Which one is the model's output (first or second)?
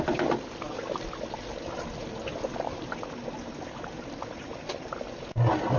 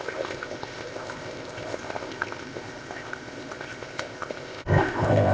second